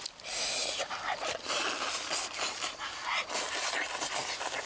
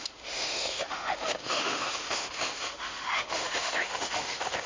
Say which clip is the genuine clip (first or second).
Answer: first